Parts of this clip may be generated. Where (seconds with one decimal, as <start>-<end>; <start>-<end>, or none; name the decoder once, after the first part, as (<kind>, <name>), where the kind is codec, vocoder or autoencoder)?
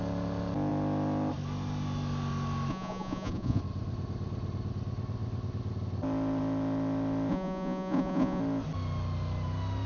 2.7-3.6 (vocoder, Vocos); 7.3-8.4